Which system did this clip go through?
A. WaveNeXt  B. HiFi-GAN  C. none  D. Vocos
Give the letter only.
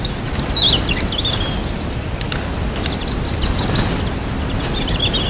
C